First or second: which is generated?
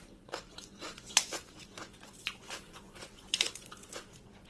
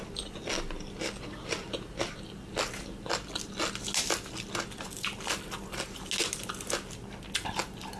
first